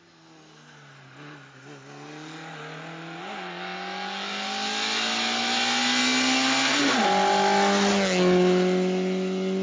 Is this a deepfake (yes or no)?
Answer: no